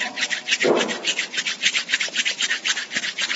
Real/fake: fake